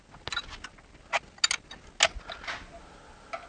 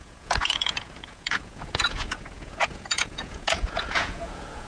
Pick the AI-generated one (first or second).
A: second